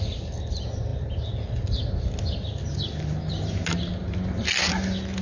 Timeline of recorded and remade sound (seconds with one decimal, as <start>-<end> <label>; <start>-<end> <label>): 0.0-5.2 recorded